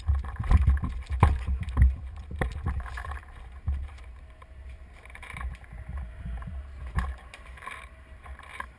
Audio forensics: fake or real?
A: fake